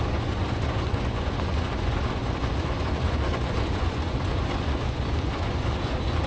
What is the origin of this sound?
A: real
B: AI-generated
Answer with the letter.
B